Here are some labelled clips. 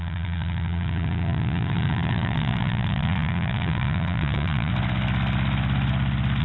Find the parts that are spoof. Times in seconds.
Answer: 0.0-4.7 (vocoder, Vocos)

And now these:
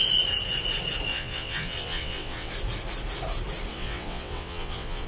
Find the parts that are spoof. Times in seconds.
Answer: 1.1-2.5 (vocoder, WaveNeXt); 3.7-5.1

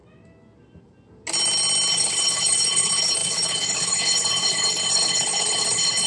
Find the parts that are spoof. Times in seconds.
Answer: 1.9-6.1 (codec, HILCodec)